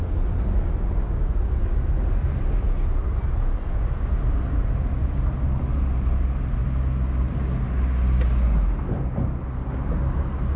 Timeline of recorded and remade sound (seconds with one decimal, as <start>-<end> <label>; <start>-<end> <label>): 0.0-10.6 recorded